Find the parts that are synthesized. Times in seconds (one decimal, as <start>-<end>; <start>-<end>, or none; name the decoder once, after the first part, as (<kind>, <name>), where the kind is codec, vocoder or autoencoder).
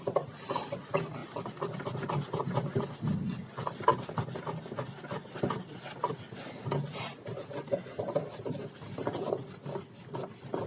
none